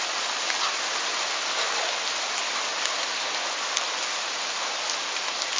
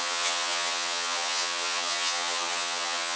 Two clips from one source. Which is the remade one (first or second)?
second